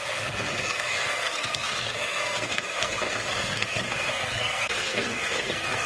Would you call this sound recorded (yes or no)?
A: no